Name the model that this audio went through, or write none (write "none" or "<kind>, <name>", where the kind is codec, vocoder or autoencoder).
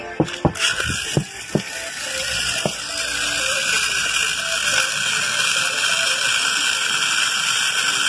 none